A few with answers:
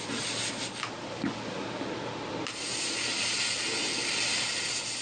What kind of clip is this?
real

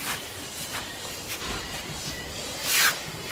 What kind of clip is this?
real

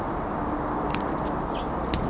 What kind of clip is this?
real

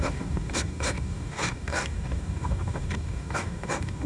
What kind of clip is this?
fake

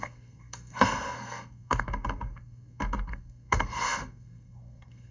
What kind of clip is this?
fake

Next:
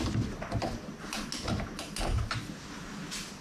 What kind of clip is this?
real